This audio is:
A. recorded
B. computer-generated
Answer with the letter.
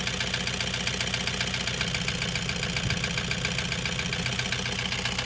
A